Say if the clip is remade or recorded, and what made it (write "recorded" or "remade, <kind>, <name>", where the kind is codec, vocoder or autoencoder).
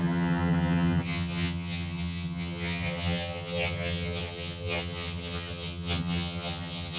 remade, vocoder, HiFi-GAN